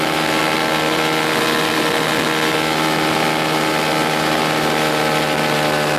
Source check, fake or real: real